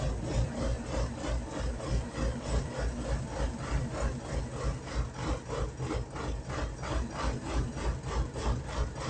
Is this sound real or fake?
real